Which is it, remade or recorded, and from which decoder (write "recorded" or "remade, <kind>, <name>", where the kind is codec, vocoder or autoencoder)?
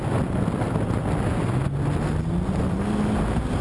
recorded